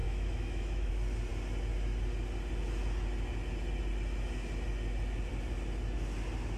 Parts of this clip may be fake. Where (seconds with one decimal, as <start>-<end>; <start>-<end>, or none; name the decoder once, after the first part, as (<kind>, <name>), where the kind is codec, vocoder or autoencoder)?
0.0-0.9 (autoencoder, DAC-VAE)